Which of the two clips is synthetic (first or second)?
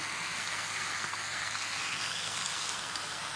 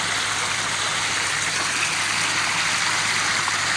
first